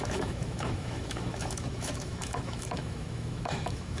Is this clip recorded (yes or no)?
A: no